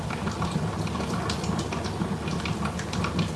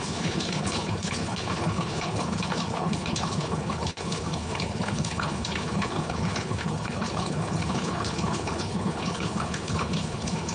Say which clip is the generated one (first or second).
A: second